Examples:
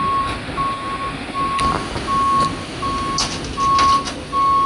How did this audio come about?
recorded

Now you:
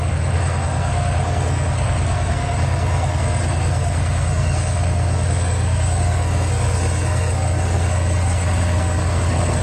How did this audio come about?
remade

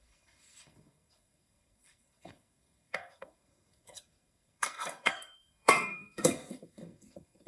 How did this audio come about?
remade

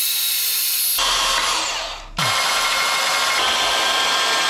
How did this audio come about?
recorded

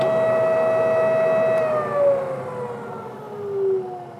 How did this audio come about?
recorded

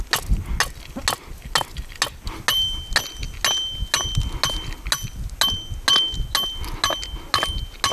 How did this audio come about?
recorded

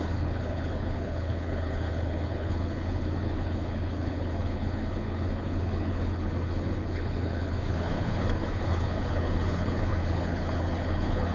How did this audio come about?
remade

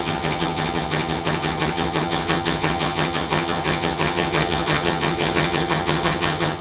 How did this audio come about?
remade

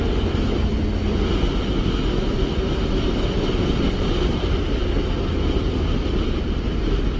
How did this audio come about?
recorded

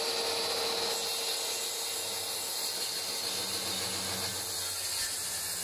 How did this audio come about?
recorded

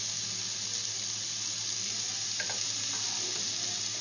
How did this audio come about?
recorded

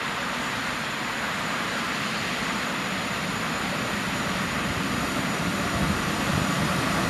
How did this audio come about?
remade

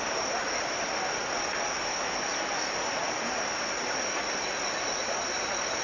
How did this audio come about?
recorded